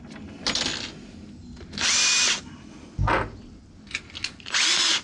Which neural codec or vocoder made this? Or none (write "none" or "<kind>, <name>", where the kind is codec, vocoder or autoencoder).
none